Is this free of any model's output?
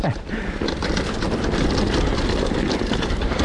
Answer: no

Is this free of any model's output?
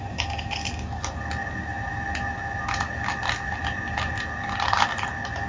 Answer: yes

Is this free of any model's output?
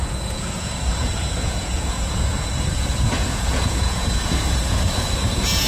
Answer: no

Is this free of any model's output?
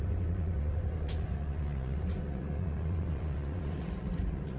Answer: no